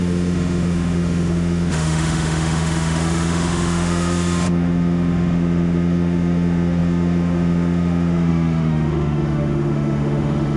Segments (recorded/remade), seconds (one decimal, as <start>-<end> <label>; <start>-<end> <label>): 0.0-10.6 remade